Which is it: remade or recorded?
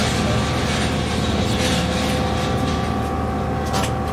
recorded